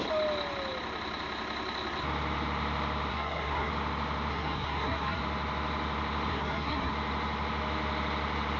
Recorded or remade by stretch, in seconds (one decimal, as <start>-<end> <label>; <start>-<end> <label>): 0.0-3.1 recorded; 3.1-3.7 remade; 3.7-4.3 recorded; 4.3-5.2 remade; 5.2-6.3 recorded; 6.3-6.9 remade; 6.9-8.6 recorded